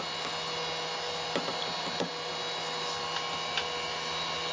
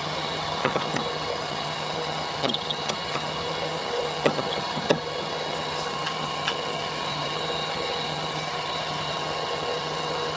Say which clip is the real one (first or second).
first